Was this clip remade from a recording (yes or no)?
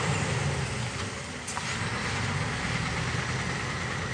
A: no